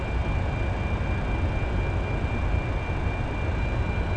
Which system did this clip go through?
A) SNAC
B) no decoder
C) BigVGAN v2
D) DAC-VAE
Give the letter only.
B